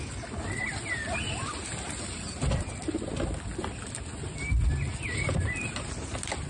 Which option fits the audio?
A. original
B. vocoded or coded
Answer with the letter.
A